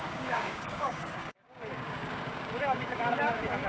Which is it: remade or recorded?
remade